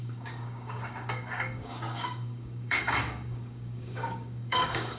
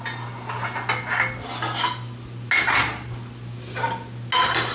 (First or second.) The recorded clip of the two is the second